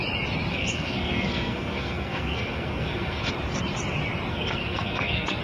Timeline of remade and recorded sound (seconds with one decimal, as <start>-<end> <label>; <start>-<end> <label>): 0.0-0.5 recorded; 0.5-3.3 remade; 3.3-4.3 recorded; 4.3-5.4 remade